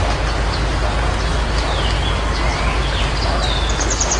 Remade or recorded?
recorded